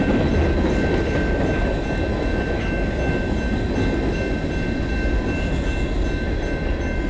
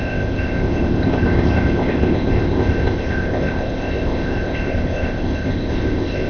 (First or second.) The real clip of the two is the first